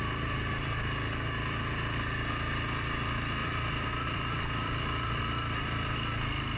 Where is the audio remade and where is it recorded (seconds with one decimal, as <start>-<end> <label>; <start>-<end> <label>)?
0.0-3.4 recorded; 3.4-5.2 remade; 5.2-6.6 recorded